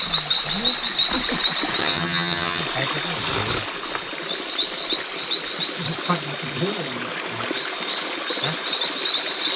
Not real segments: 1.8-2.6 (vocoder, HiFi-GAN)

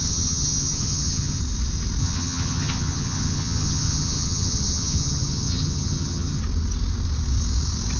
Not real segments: 0.0-1.4 (vocoder, HiFi-GAN); 2.0-6.4

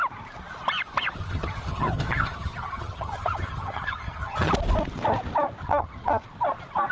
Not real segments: 1.2-4.5 (vocoder, HiFi-GAN); 5.6-6.2

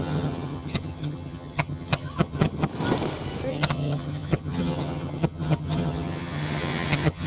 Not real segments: 0.0-2.7 (vocoder, HiFi-GAN); 3.5-7.3

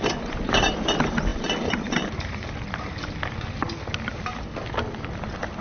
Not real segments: none